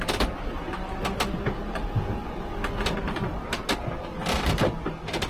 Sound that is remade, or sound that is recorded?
recorded